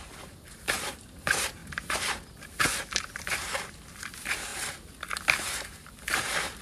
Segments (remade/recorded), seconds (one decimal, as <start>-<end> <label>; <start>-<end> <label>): 0.0-4.5 remade; 4.5-5.4 recorded; 5.4-6.6 remade